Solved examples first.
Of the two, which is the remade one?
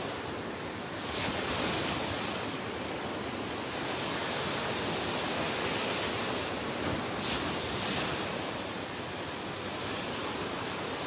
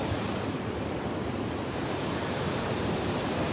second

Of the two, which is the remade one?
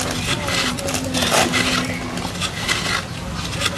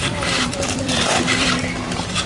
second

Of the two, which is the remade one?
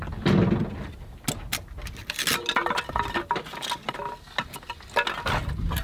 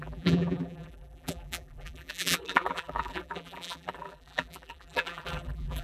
second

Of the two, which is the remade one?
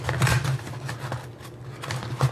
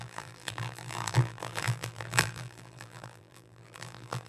second